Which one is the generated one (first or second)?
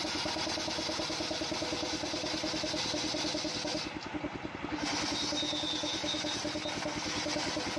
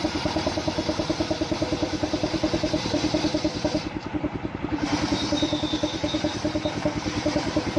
second